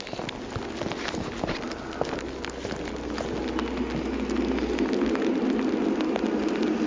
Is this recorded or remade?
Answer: recorded